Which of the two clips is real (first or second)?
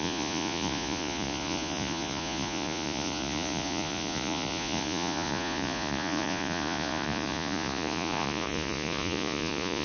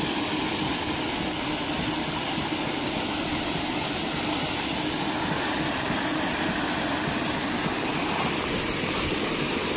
second